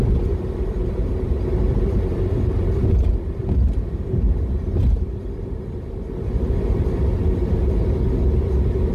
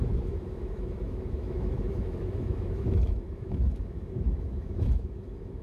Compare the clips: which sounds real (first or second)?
first